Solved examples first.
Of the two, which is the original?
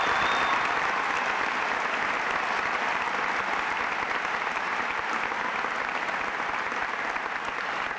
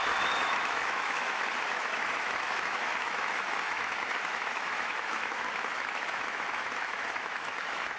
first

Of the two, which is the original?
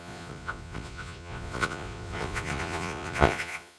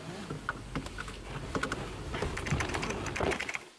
second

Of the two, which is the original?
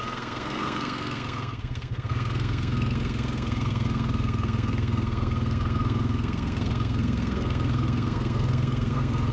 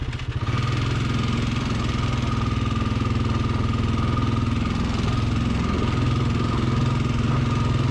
second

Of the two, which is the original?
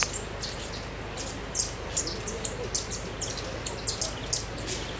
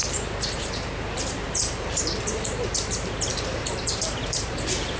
first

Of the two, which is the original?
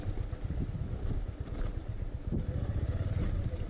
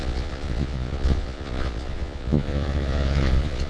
first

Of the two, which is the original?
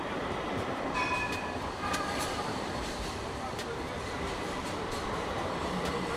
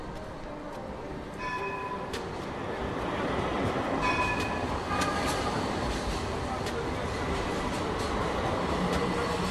second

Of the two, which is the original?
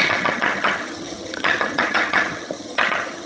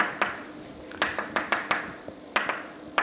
second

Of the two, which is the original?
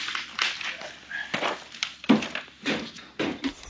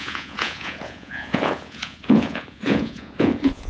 first